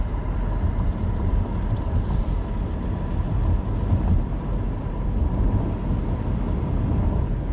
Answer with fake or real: real